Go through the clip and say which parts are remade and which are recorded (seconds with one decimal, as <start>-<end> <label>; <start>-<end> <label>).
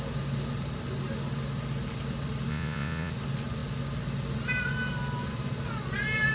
0.0-2.5 recorded; 2.5-3.1 remade; 3.1-6.3 recorded